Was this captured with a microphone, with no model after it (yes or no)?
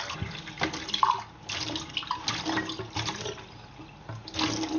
yes